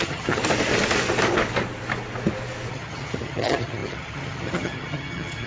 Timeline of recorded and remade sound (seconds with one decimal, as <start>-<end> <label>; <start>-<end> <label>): 0.0-0.4 remade; 0.4-2.7 recorded; 2.7-5.5 remade